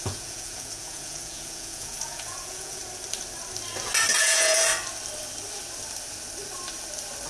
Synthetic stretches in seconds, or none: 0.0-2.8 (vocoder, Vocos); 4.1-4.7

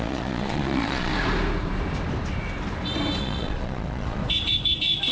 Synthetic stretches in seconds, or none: 0.0-1.1 (vocoder, Vocos); 3.2-4.2